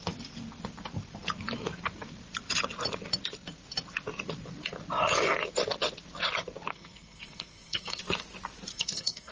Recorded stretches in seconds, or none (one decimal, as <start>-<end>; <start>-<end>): 0.0-6.7; 8.0-8.7